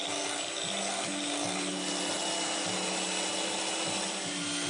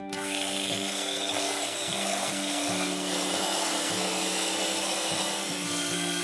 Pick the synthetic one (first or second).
second